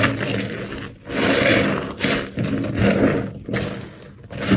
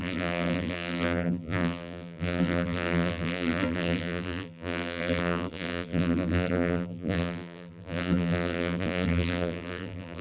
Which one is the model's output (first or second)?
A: second